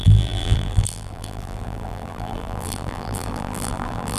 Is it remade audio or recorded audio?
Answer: remade